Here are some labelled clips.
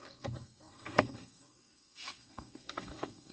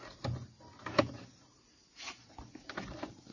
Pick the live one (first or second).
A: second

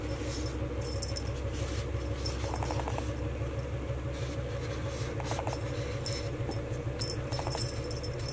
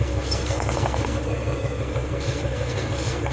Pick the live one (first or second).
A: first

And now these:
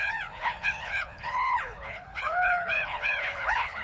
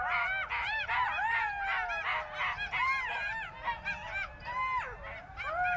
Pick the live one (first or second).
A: second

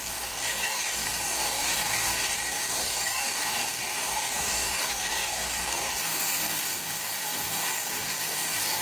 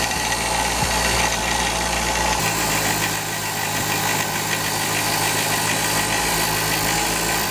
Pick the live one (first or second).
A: second